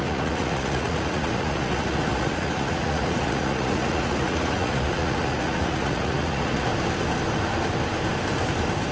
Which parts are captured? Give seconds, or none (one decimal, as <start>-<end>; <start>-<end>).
6.7-8.9